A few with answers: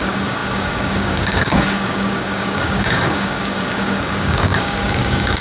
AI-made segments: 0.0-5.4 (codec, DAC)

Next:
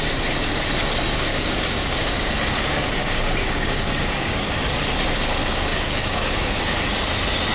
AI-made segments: 1.3-2.3 (codec, DAC); 3.0-4.5; 5.7-6.6

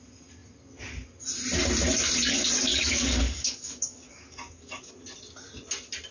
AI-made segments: 2.7-4.9 (codec, DAC)

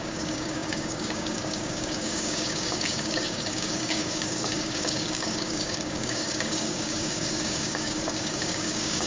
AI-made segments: 0.0-9.1 (codec, DAC)

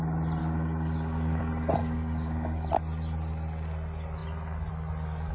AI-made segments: 0.4-1.4 (codec, DAC); 1.8-2.7